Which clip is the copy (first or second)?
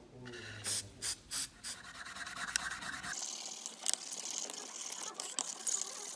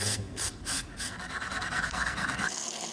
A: second